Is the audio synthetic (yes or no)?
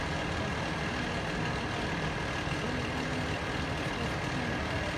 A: no